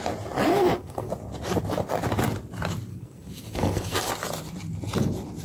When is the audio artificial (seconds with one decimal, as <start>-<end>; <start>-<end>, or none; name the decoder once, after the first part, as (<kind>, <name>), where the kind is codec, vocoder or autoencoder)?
0.5-1.1 (codec, SNAC); 2.9-4.1